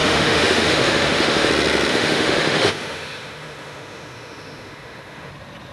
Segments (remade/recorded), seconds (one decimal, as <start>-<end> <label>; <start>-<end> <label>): 0.0-1.5 remade; 1.5-1.9 recorded; 1.9-5.3 remade; 5.3-5.7 recorded